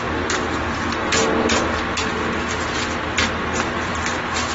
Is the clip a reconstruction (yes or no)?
no